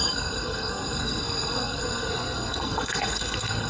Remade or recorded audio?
remade